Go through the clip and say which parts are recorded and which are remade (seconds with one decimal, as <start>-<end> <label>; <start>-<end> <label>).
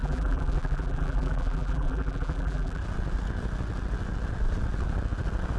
0.0-2.8 remade; 2.8-5.6 recorded